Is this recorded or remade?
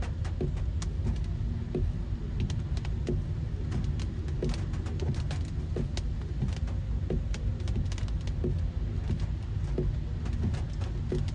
recorded